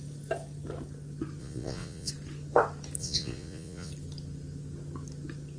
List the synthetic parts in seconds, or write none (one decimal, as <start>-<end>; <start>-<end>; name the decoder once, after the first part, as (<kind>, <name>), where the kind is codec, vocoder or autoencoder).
1.4-2.1 (vocoder, Vocos); 3.0-3.9